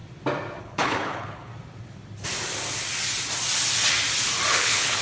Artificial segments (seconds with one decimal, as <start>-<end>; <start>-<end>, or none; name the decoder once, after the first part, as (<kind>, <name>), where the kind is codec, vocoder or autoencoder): 0.6-1.5 (codec, HILCodec); 4.5-5.0